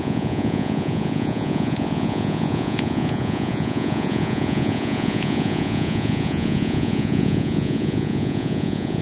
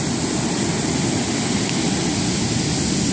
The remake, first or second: first